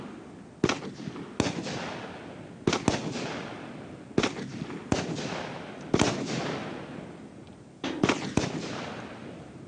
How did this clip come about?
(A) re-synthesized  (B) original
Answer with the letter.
B